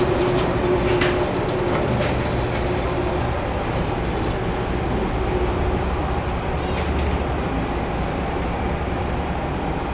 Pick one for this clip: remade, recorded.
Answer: recorded